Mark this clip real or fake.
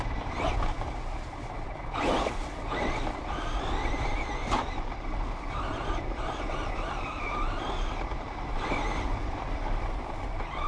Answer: real